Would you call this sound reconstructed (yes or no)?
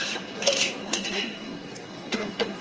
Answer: yes